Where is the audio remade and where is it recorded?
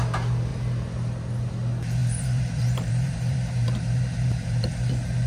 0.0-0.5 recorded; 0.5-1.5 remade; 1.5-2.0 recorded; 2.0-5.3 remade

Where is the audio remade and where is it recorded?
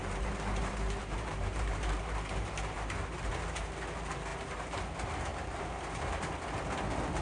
0.0-3.3 remade; 3.3-4.3 recorded; 4.3-4.8 remade; 4.8-5.3 recorded; 5.3-6.0 remade; 6.0-7.2 recorded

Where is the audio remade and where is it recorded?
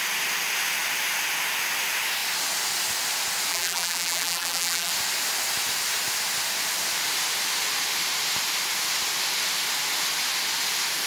0.0-3.5 recorded; 3.5-4.9 remade; 4.9-11.1 recorded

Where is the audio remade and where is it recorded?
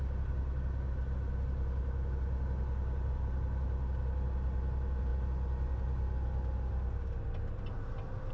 0.0-8.3 recorded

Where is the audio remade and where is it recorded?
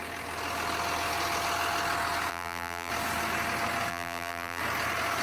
0.0-2.3 recorded; 2.3-2.9 remade; 2.9-3.9 recorded; 3.9-4.6 remade; 4.6-5.2 recorded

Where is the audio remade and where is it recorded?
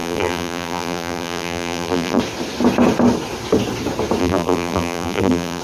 0.0-2.2 remade; 2.2-4.2 recorded; 4.2-5.6 remade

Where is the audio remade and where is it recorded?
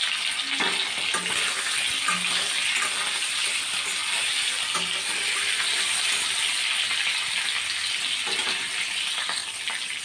0.0-4.0 recorded; 4.0-4.6 remade; 4.6-10.0 recorded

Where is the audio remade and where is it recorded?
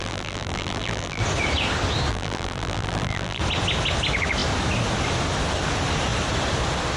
0.0-1.2 remade; 1.2-2.1 recorded; 2.1-3.4 remade; 3.4-7.0 recorded